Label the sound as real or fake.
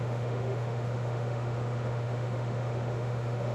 fake